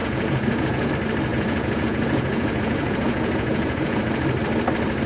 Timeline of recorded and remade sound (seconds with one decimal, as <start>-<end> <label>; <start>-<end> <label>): 0.0-0.9 remade; 0.9-1.3 recorded; 1.3-4.0 remade; 4.0-5.1 recorded